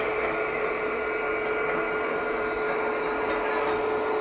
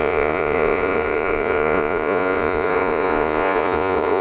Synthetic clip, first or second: second